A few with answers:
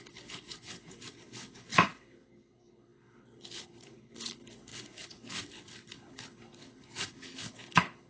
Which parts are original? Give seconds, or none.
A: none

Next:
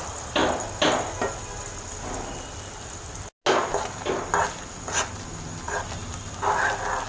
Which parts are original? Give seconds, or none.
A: 0.0-7.1

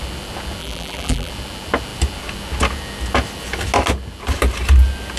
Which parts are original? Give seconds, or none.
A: 0.0-0.6; 1.3-5.2

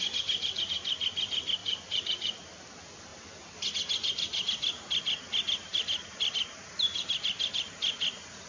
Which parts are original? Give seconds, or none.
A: 0.0-1.6; 2.4-8.5

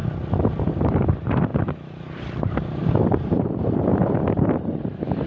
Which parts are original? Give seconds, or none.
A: 0.0-0.6